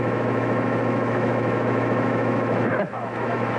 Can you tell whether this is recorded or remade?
remade